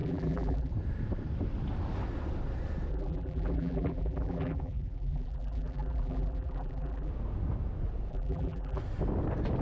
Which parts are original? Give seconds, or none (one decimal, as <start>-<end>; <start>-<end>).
0.7-2.9; 7.1-8.1; 8.8-9.6